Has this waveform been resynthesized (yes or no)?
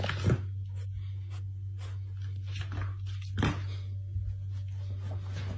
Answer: no